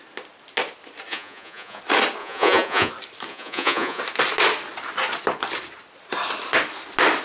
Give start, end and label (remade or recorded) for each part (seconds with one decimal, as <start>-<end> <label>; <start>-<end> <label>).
0.0-1.1 recorded; 1.1-1.8 remade; 1.8-2.2 recorded; 2.2-2.9 remade; 2.9-3.3 recorded; 3.3-4.0 remade; 4.0-7.2 recorded